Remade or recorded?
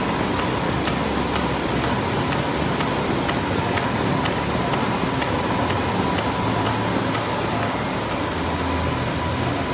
recorded